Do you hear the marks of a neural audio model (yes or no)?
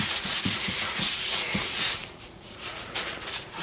yes